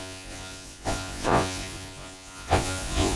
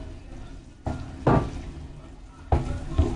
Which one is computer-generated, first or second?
first